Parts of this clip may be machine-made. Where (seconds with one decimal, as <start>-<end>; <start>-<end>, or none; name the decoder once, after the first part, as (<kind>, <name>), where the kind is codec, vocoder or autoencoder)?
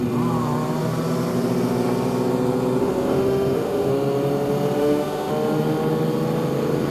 2.8-3.9 (autoencoder, DAC-VAE); 4.8-5.3